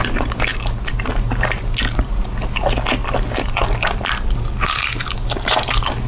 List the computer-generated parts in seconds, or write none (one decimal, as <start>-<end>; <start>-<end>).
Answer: none